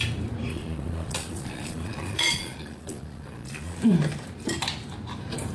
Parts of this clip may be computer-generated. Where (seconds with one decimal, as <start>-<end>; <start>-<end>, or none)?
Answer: 0.5-3.8